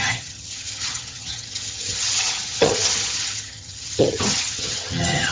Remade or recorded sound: remade